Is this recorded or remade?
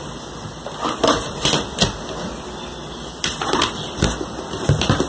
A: remade